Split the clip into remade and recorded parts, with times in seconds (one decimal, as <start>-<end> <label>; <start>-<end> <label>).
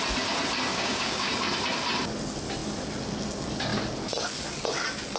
0.0-0.7 recorded; 0.7-1.3 remade; 1.3-5.2 recorded